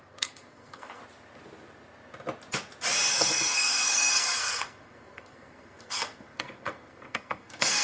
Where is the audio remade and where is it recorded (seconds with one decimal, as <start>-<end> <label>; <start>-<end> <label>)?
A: 0.0-1.0 remade; 1.0-3.1 recorded; 3.1-7.8 remade